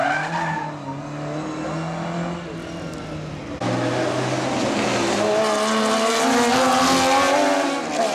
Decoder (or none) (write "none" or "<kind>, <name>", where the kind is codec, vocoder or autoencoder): none